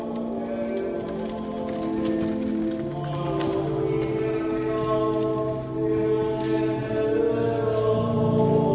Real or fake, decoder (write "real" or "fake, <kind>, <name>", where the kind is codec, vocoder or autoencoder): real